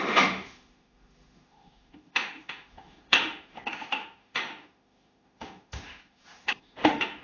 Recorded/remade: remade